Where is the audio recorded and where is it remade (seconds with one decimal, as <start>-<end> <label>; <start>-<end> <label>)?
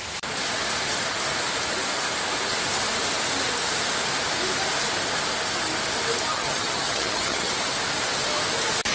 0.0-6.3 recorded; 6.3-7.5 remade; 7.5-8.9 recorded